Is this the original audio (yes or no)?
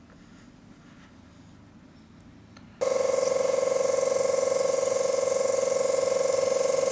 yes